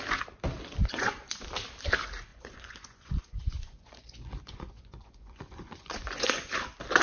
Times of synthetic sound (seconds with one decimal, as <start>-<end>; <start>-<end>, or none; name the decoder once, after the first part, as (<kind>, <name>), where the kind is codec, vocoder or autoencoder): 0.8-1.4 (vocoder, Vocos); 2.3-6.5